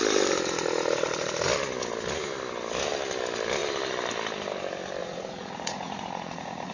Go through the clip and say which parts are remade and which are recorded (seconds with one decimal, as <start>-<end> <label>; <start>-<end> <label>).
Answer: 0.0-5.0 recorded; 5.0-6.7 remade

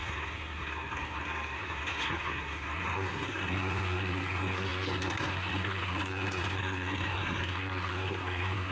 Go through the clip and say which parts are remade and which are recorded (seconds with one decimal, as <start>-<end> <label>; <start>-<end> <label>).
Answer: 0.0-8.7 remade

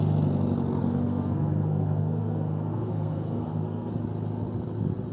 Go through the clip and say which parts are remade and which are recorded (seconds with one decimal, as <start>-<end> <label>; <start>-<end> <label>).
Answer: 0.0-0.8 recorded; 0.8-3.9 remade; 3.9-5.1 recorded

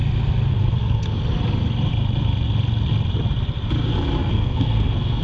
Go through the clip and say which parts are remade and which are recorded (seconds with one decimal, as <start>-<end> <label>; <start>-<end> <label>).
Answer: 0.0-0.5 recorded; 0.5-1.2 remade; 1.2-4.3 recorded; 4.3-5.2 remade

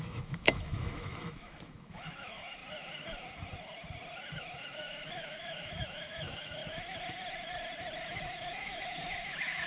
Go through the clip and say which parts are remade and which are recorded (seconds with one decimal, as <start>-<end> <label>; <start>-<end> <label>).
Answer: 0.0-2.6 remade; 2.6-4.4 recorded; 4.4-6.6 remade; 6.6-8.2 recorded; 8.2-9.7 remade

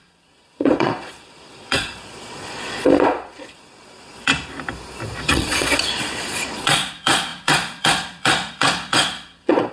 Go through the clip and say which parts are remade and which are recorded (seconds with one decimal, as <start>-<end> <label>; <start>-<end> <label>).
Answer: 0.0-4.3 remade; 4.3-5.3 recorded; 5.3-9.7 remade

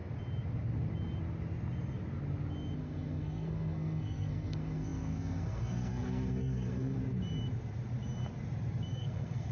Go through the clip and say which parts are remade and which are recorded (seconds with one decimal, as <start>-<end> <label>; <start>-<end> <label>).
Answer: 0.0-2.8 recorded; 2.8-7.0 remade; 7.0-8.9 recorded; 8.9-9.5 remade

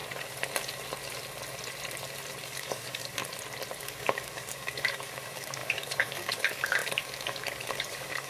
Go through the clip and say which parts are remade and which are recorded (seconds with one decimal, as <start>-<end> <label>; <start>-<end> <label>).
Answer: 0.0-2.4 recorded; 2.4-3.2 remade; 3.2-3.8 recorded; 3.8-8.3 remade